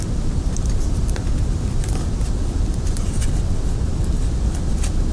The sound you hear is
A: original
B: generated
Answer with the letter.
B